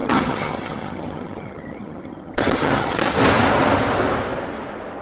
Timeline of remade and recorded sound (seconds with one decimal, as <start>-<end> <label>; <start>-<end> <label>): 0.0-3.0 remade; 3.0-5.0 recorded